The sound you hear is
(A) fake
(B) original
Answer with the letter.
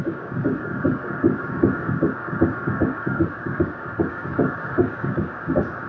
A